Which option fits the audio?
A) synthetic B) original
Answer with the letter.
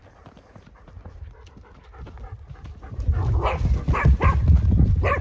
B